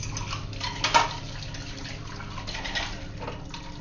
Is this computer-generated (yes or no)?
no